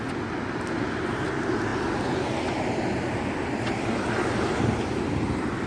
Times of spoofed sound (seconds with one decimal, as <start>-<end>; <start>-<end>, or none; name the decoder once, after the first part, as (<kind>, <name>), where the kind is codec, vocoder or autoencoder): none